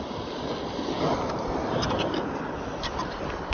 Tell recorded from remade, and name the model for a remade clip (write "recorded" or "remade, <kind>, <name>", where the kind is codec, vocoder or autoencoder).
recorded